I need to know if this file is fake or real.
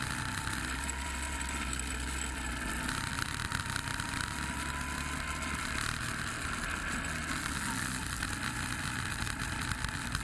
real